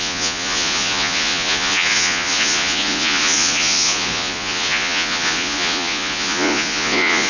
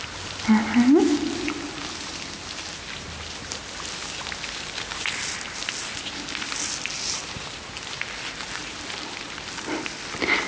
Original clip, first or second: second